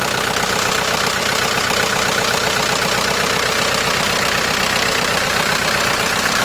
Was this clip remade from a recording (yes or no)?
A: yes